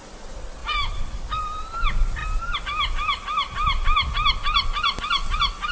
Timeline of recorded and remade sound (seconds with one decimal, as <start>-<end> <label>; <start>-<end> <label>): 0.0-0.6 recorded; 0.6-1.8 remade; 1.8-5.7 recorded

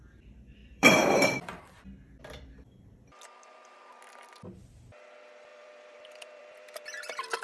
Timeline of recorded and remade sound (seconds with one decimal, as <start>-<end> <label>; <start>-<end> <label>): 0.0-0.6 recorded; 0.6-1.6 remade; 1.6-5.5 recorded; 5.5-7.4 remade

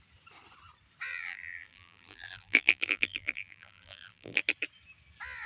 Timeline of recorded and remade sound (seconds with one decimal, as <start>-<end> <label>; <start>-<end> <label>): 0.0-1.1 recorded; 1.1-4.4 remade; 4.4-5.5 recorded

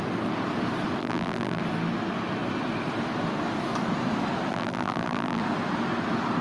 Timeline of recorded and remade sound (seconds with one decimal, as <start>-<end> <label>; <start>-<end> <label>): 0.0-1.0 recorded; 1.0-1.6 remade; 1.6-4.5 recorded; 4.5-5.4 remade; 5.4-6.4 recorded

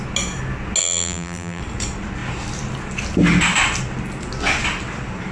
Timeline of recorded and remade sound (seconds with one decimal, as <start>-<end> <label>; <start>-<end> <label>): 0.0-0.8 recorded; 0.8-1.6 remade; 1.6-5.3 recorded

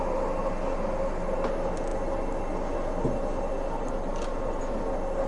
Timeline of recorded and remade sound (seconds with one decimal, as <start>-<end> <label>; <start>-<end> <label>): 0.0-5.3 recorded